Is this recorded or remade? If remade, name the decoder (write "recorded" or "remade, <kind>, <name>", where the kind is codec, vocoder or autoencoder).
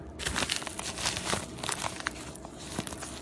recorded